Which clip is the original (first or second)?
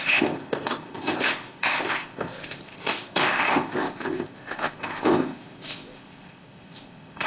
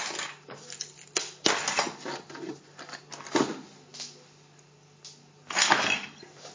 second